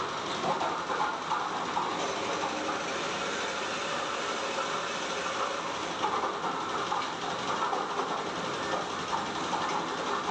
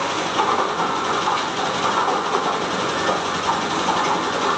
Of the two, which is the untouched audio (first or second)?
first